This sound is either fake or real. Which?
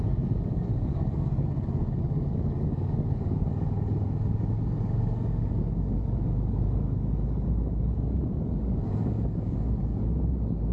fake